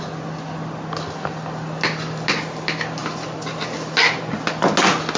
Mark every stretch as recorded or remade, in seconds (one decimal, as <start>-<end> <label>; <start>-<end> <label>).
0.0-5.2 recorded